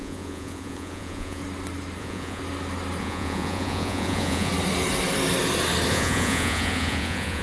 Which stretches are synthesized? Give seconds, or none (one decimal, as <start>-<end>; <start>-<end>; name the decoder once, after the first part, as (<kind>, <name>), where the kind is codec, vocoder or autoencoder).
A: 0.0-1.4 (vocoder, Vocos); 2.0-2.4; 3.0-4.5; 5.9-7.4